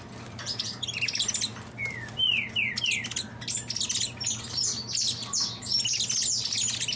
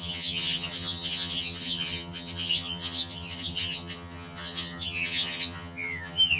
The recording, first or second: first